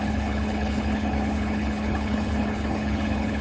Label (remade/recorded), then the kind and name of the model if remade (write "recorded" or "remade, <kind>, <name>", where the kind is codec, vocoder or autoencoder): remade, codec, HILCodec